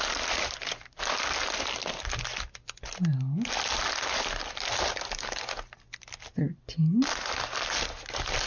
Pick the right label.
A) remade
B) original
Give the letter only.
B